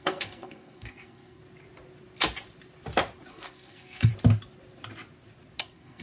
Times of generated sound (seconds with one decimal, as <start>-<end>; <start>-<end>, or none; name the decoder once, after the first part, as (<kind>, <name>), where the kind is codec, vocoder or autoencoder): 0.0-1.4 (codec, SNAC); 3.3-4.1; 5.6-6.0